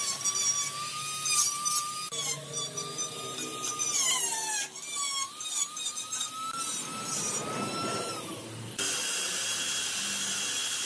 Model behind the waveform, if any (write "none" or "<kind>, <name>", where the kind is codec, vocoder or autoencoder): none